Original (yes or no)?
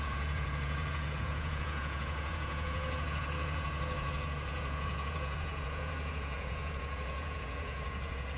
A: no